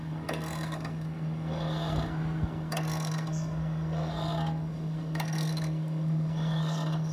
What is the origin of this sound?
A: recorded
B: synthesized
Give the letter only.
B